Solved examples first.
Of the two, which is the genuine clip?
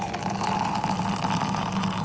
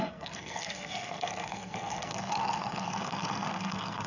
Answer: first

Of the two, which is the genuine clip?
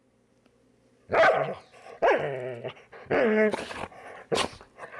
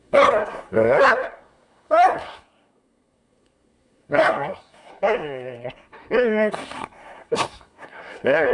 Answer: first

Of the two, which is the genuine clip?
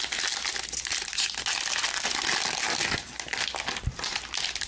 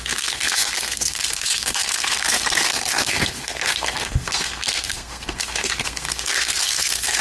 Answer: first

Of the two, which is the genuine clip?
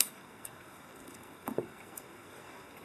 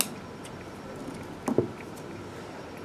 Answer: second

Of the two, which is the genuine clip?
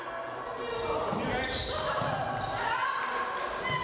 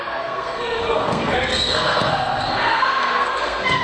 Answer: first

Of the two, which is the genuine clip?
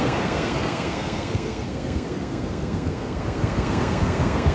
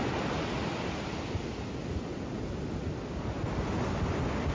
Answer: second